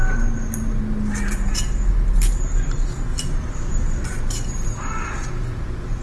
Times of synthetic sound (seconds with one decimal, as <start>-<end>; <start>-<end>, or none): 3.1-6.0